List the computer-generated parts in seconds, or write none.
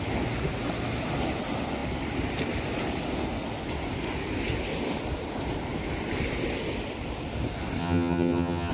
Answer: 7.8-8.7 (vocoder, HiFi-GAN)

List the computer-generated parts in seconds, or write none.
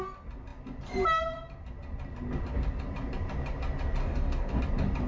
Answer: 4.0-4.6 (codec, DAC)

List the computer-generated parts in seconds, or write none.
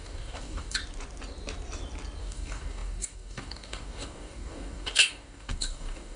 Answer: 0.0-0.8 (codec, DAC); 2.2-6.2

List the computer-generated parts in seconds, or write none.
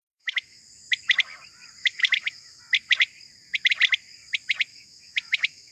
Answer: 0.0-0.6 (autoencoder, DAC-VAE); 1.8-2.6; 4.7-5.7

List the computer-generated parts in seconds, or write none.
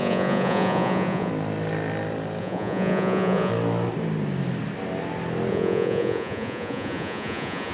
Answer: 0.0-1.3 (vocoder, Vocos); 2.4-3.5; 5.5-7.7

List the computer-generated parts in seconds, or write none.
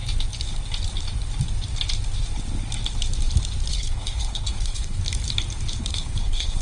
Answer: 3.7-5.0 (codec, HILCodec); 5.8-6.6